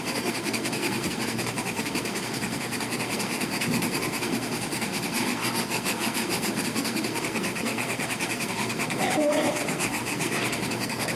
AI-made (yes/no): yes